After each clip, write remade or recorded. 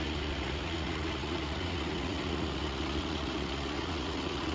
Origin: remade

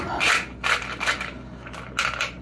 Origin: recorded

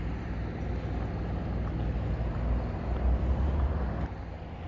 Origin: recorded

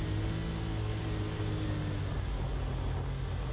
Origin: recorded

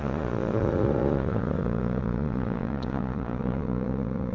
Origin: remade